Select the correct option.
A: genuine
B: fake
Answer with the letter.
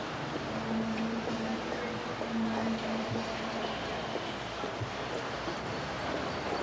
A